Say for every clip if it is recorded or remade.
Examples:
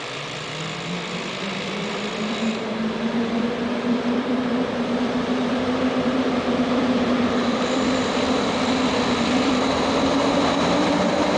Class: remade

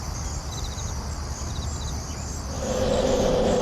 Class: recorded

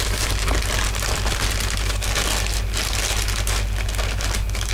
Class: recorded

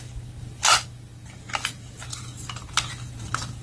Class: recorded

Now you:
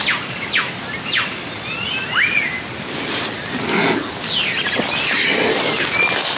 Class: recorded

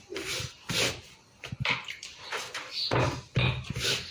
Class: recorded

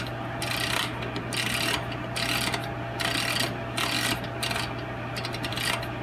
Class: recorded